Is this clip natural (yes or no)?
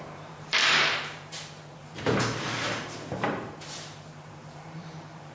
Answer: no